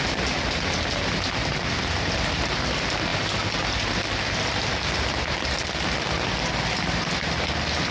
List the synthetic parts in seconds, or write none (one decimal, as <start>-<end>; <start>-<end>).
none

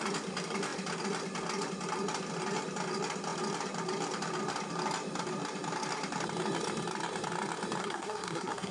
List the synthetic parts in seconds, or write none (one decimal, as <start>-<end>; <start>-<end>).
7.8-8.7

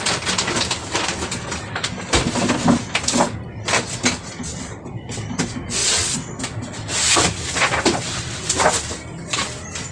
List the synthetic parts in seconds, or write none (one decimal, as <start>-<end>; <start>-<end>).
5.8-6.4

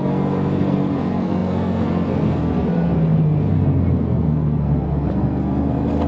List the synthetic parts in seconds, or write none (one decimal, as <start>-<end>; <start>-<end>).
0.0-6.1

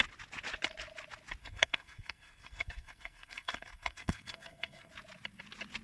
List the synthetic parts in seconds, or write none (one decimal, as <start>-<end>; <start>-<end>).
1.4-4.9

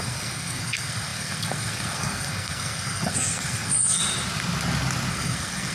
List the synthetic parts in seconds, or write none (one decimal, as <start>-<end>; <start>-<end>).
0.0-4.0; 5.1-5.7